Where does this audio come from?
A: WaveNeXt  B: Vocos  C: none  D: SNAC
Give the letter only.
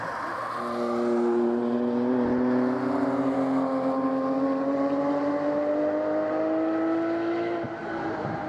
C